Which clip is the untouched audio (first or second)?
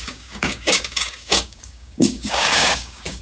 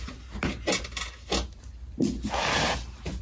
second